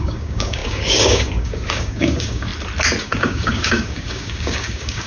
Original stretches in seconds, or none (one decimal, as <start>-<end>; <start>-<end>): 2.5-3.0